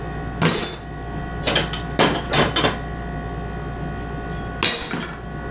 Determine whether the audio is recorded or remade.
recorded